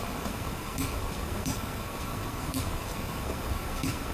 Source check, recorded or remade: remade